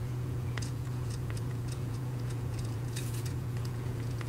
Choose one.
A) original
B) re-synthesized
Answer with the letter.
B